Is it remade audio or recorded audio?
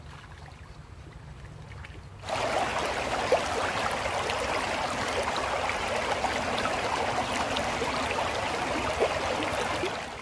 recorded